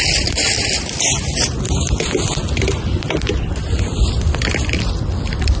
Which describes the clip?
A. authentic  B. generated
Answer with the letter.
B